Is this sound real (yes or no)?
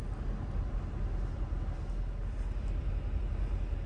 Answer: yes